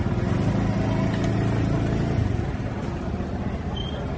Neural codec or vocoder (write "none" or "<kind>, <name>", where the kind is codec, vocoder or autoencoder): none